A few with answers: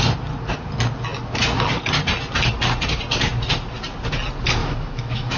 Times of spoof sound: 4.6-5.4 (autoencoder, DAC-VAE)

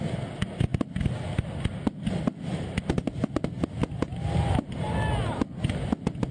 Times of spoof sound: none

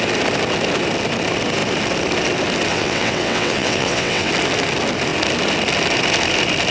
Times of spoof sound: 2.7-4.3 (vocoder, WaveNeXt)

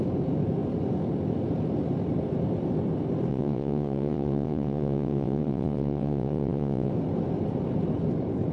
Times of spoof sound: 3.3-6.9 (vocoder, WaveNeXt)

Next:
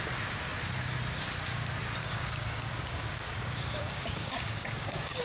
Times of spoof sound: 2.0-5.2 (codec, DAC)

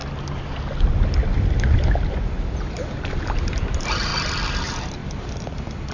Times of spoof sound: 3.5-4.1 (vocoder, BigVGAN v2); 4.6-5.0

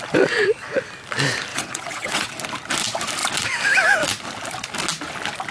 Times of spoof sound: 1.5-2.3 (vocoder, WaveNeXt)